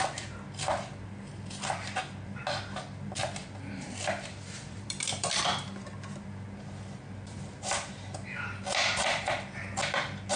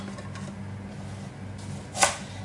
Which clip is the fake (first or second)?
first